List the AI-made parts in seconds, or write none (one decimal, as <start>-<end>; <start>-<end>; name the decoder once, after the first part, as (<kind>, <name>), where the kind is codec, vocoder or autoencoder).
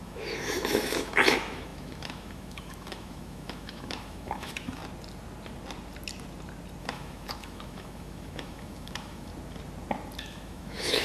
0.0-4.8 (autoencoder, DAC-VAE); 6.8-9.3; 10.2-11.0